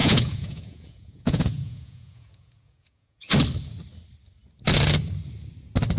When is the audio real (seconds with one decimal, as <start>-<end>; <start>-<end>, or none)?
3.3-6.0